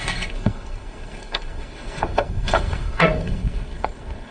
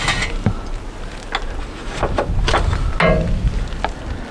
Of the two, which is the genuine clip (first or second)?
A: second